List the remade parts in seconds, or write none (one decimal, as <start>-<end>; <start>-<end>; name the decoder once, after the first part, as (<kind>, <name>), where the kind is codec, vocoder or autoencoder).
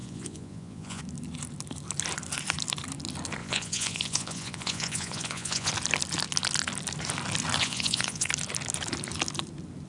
0.0-1.0 (vocoder, Vocos); 3.4-5.7; 7.6-8.3